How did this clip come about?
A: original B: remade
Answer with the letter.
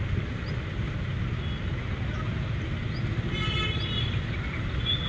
A